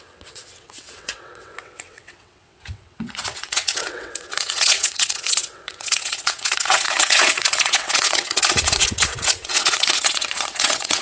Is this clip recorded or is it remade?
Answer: remade